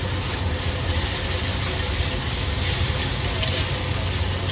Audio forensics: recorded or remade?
recorded